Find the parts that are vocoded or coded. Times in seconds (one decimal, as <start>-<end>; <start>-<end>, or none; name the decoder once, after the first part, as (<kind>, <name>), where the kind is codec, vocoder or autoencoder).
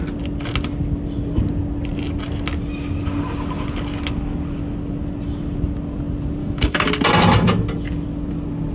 6.4-6.9 (autoencoder, DAC-VAE)